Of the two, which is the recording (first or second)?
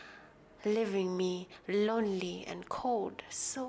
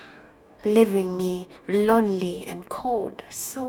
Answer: first